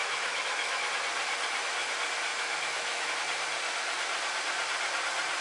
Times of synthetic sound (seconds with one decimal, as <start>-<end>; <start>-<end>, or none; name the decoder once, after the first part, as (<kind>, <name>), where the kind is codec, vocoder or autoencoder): 0.0-0.9 (autoencoder, DAC-VAE); 2.3-3.1